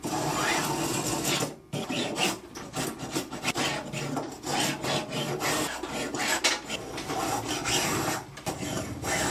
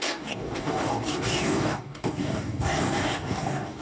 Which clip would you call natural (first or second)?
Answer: first